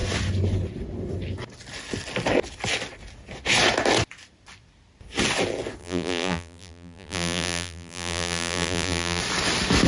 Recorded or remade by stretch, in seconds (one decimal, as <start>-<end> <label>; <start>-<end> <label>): 0.0-5.8 recorded; 5.8-9.2 remade; 9.2-9.9 recorded